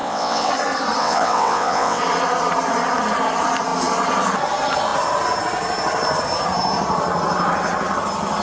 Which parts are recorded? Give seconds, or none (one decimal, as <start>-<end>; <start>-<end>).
0.5-1.0; 2.0-8.4